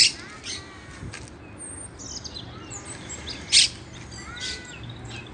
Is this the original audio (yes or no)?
yes